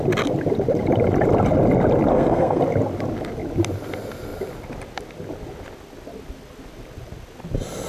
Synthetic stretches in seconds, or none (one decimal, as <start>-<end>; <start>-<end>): 2.1-2.6